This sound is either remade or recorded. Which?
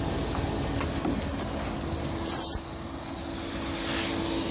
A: recorded